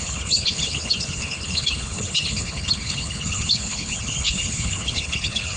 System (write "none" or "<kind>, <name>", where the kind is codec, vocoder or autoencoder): codec, HILCodec